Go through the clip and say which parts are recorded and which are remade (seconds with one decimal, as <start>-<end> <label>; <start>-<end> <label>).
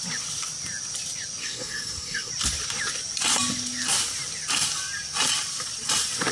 0.0-1.4 recorded; 1.4-2.3 remade; 2.3-6.3 recorded